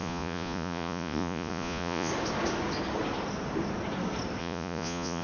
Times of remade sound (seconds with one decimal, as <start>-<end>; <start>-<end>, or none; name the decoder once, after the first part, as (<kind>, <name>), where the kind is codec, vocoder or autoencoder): 0.0-2.1 (vocoder, Vocos); 4.4-5.2